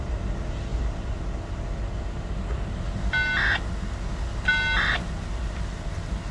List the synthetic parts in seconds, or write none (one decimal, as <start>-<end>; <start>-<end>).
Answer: none